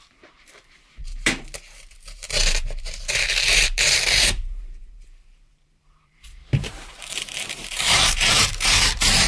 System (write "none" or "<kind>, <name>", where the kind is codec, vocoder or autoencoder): vocoder, BigVGAN v2